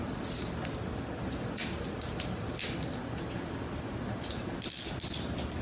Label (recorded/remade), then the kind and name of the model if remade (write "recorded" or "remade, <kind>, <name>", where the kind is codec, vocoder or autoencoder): recorded